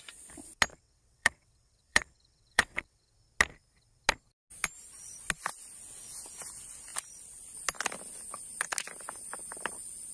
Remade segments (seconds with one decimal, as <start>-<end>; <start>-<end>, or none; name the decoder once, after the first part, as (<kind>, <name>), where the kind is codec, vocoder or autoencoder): 0.7-3.1 (vocoder, WaveNeXt)